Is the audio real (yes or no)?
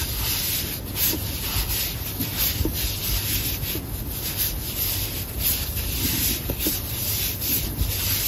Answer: yes